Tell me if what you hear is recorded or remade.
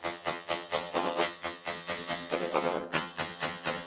remade